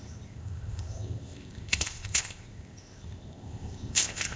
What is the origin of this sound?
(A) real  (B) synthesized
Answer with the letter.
B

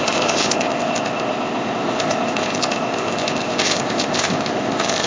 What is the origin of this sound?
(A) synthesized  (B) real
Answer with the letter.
A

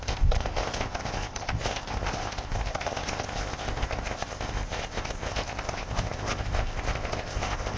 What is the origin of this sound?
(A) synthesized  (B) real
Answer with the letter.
A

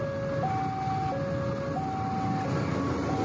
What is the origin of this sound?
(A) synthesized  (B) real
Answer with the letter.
B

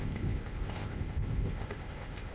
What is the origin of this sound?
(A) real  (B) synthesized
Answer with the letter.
B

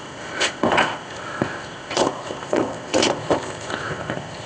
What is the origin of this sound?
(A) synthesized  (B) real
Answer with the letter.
A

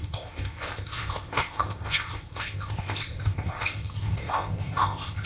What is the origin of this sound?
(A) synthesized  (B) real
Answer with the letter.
A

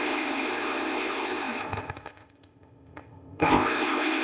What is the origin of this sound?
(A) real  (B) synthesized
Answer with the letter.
B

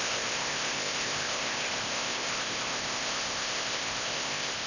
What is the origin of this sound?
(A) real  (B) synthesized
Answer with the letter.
B